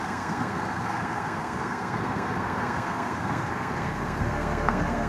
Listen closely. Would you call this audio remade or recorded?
remade